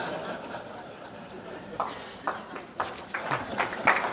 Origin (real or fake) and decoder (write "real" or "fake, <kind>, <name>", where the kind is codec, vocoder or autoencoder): fake, vocoder, BigVGAN v2